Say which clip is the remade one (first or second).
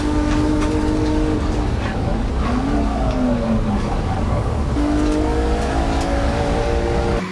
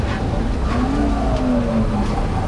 first